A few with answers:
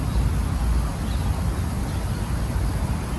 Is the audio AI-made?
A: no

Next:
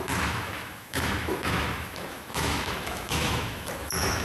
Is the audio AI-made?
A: yes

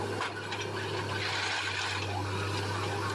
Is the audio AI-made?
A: no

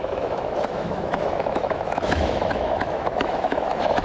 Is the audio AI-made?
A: yes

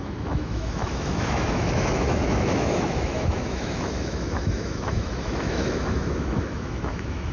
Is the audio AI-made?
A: yes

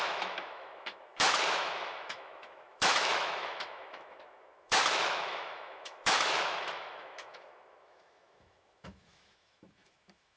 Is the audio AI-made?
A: yes